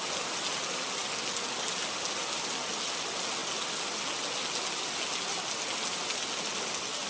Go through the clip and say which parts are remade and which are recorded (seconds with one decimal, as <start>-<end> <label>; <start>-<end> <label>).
0.0-7.1 recorded